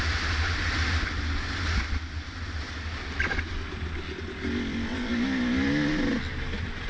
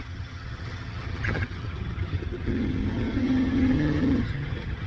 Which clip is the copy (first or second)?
second